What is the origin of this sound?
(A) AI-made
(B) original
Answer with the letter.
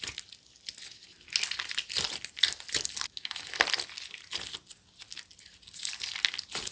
B